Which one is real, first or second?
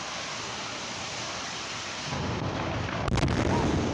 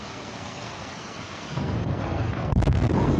first